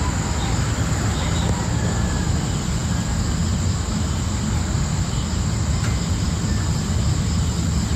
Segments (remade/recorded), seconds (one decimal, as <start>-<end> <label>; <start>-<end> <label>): 0.0-8.0 recorded